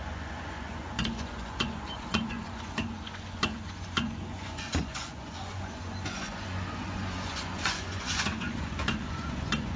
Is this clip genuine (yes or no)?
no